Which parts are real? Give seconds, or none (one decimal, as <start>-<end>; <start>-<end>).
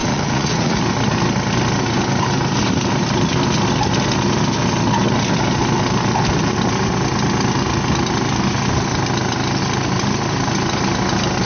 0.8-11.4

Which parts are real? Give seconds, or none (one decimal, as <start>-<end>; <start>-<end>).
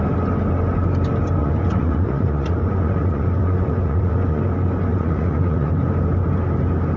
0.0-1.4; 4.4-4.9; 5.7-7.0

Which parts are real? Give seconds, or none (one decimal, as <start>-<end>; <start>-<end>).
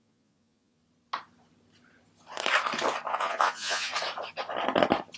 0.8-3.1; 3.9-5.2